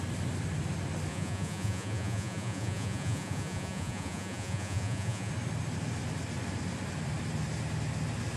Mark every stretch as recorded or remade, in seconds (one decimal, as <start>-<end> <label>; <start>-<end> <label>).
0.0-1.1 recorded; 1.1-5.3 remade; 5.3-8.4 recorded